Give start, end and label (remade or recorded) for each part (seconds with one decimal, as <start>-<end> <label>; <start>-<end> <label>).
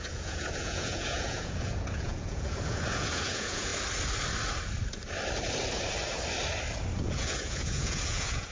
0.0-3.7 remade; 3.7-7.0 recorded; 7.0-8.5 remade